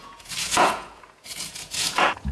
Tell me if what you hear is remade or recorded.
remade